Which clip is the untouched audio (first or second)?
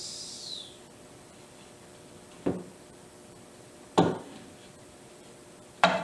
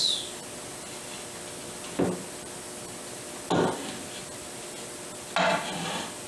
second